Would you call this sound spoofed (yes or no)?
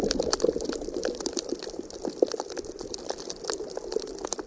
no